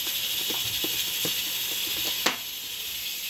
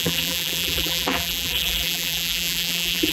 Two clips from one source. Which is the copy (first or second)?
second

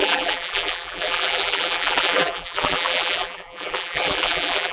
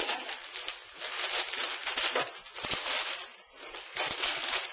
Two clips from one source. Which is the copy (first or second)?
first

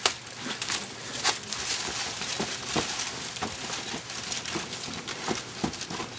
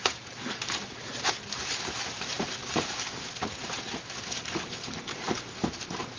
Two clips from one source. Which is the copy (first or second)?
second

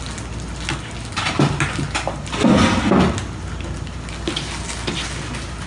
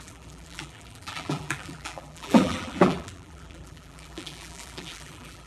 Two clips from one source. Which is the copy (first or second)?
second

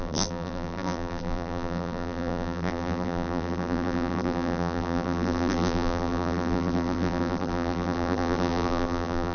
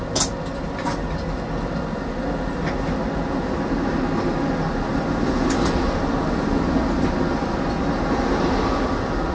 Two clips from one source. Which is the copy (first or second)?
first